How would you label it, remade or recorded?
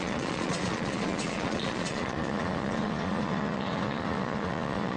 remade